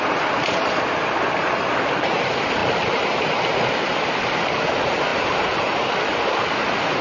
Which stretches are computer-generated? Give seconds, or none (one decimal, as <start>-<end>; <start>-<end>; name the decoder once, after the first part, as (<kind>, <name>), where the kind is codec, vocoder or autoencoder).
5.1-5.9 (vocoder, BigVGAN v2)